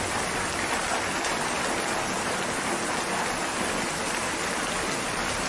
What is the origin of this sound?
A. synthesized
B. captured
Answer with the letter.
B